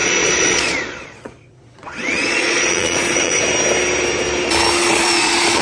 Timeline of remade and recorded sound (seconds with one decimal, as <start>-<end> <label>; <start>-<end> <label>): 0.0-3.4 remade; 3.4-4.8 recorded; 4.8-5.6 remade